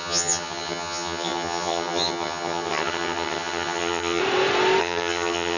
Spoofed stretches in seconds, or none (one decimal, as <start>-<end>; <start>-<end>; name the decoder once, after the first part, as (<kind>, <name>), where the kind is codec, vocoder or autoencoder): 0.0-4.2 (vocoder, HiFi-GAN); 4.8-5.6